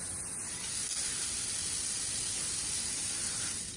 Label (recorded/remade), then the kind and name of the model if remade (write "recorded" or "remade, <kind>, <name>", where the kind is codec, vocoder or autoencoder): recorded